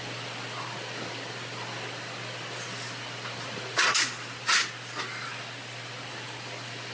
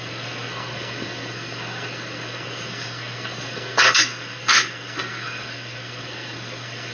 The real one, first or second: first